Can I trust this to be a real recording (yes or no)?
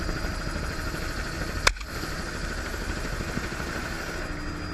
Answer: yes